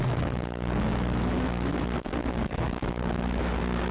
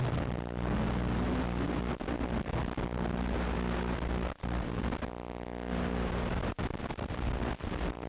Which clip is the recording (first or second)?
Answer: second